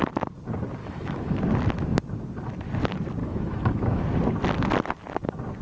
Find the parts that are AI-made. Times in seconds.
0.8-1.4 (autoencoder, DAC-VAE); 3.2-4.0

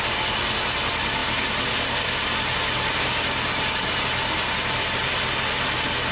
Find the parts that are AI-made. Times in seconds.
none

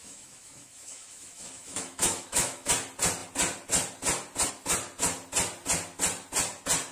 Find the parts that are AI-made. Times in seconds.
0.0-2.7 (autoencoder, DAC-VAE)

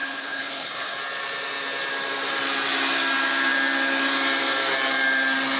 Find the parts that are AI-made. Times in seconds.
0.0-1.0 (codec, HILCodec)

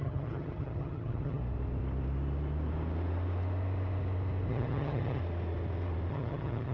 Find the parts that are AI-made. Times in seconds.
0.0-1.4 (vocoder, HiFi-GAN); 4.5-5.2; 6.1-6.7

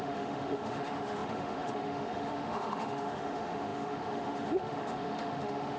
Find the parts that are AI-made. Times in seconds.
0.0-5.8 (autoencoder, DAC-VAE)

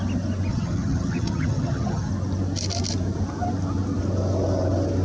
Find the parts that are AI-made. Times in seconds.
0.5-2.1 (vocoder, HiFi-GAN)

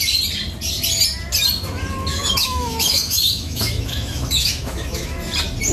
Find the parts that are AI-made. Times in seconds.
2.1-5.2 (autoencoder, DAC-VAE)